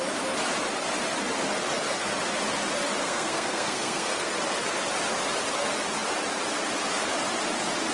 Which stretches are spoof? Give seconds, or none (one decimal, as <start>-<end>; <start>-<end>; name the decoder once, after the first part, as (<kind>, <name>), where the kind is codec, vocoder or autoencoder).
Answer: 3.0-4.3 (codec, SNAC)